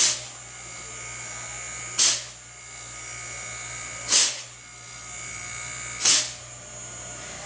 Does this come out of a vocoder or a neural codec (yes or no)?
no